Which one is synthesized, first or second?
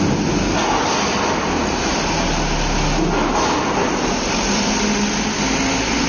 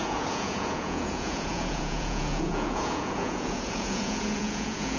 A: second